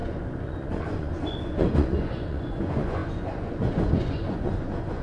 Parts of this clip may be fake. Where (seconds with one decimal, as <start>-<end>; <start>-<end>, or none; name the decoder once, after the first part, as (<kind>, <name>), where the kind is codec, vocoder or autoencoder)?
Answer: 0.0-5.0 (vocoder, Vocos)